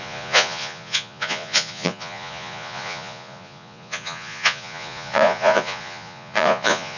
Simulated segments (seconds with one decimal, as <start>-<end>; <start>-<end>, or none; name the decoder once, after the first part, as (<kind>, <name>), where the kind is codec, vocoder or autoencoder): 0.0-7.0 (vocoder, Vocos)